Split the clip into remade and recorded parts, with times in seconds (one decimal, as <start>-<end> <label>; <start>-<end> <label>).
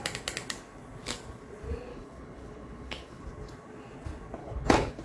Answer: 0.0-1.9 recorded; 1.9-3.2 remade; 3.2-4.4 recorded; 4.4-5.0 remade